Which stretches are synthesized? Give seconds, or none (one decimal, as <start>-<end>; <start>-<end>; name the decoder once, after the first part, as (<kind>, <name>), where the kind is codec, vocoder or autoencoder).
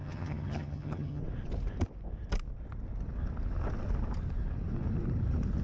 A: 0.0-1.2 (vocoder, HiFi-GAN)